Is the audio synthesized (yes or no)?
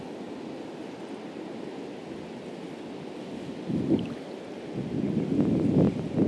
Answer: no